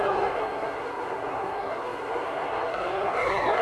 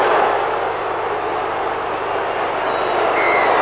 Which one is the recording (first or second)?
second